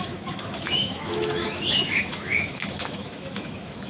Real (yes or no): no